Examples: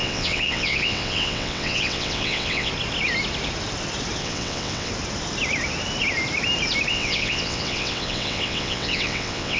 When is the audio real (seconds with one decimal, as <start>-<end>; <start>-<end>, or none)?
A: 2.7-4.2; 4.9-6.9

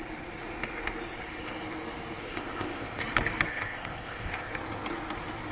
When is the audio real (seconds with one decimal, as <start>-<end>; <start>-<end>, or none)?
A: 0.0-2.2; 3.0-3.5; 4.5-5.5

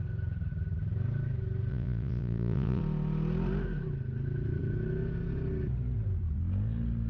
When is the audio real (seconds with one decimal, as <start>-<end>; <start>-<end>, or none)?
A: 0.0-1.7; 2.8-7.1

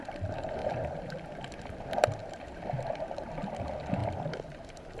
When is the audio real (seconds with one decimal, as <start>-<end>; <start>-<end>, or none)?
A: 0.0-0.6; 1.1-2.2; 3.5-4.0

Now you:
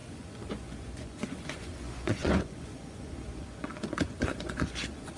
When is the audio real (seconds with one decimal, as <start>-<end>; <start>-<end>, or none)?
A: none

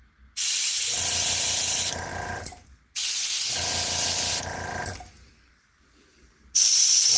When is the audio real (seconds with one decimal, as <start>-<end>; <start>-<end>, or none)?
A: 0.0-7.2

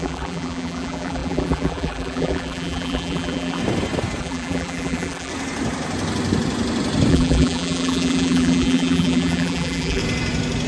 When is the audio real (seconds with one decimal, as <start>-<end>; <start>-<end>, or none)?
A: 3.6-4.2; 5.3-7.1; 10.0-10.7

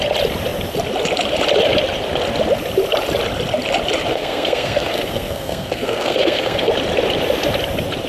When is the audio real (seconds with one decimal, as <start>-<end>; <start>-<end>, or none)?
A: 0.0-4.1; 6.7-8.1